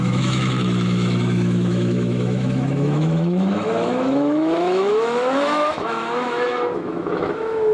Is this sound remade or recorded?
remade